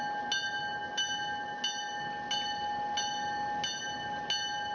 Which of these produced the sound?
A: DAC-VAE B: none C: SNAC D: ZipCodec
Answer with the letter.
B